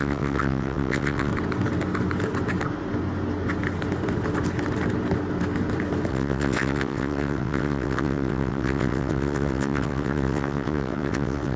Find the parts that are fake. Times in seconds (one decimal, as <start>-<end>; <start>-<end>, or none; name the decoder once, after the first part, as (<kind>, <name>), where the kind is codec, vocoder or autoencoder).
0.0-1.3 (vocoder, WaveNeXt); 6.1-11.6